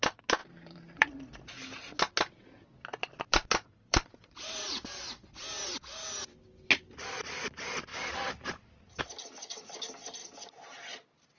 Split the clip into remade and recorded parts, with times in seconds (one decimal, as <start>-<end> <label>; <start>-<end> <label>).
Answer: 0.0-0.4 recorded; 0.4-2.0 remade; 2.0-2.9 recorded; 2.9-5.0 remade; 5.0-7.9 recorded; 7.9-9.0 remade; 9.0-10.2 recorded; 10.2-10.9 remade; 10.9-11.4 recorded